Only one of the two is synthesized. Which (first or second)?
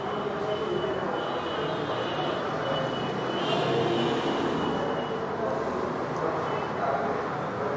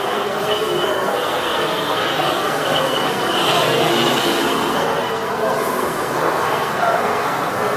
second